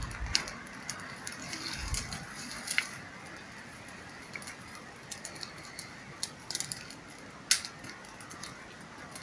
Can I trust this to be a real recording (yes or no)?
yes